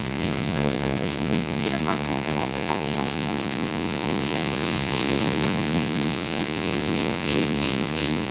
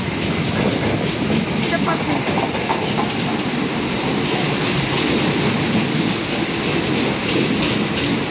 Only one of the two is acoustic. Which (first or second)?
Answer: second